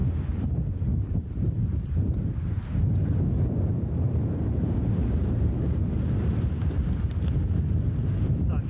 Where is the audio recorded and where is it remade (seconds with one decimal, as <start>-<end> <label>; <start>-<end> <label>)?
0.0-1.3 recorded; 1.3-3.1 remade; 3.1-3.7 recorded; 3.7-5.8 remade; 5.8-6.8 recorded; 6.8-8.7 remade